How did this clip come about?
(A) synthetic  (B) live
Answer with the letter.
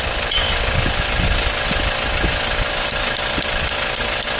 B